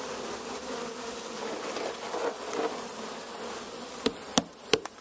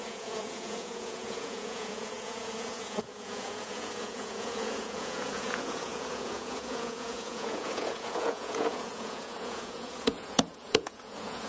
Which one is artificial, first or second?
second